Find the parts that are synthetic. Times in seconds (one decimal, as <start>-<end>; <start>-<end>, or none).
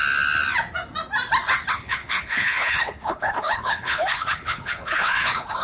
1.7-5.6